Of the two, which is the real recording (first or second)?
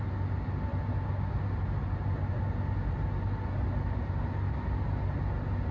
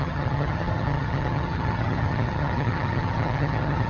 first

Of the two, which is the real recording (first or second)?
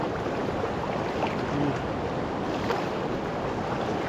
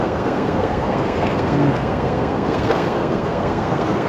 first